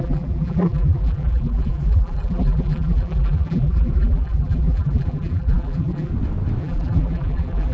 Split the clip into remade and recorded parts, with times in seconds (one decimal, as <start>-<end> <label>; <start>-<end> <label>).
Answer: 0.0-6.1 remade; 6.1-6.6 recorded; 6.6-7.7 remade